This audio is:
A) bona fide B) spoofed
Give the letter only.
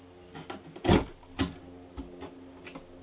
A